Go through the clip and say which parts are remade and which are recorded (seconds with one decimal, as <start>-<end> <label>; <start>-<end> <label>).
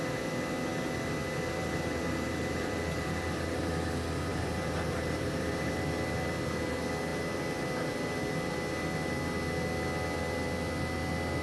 0.0-1.6 recorded; 1.6-3.7 remade; 3.7-4.3 recorded; 4.3-5.7 remade; 5.7-11.4 recorded